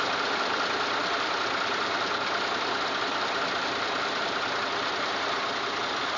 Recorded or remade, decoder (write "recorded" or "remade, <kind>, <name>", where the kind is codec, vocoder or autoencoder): recorded